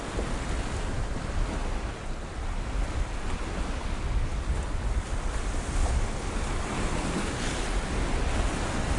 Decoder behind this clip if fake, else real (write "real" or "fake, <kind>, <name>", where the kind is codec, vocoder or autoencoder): real